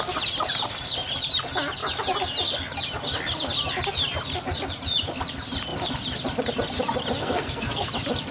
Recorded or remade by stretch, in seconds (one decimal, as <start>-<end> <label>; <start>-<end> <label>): 0.0-7.2 recorded; 7.2-7.9 remade; 7.9-8.3 recorded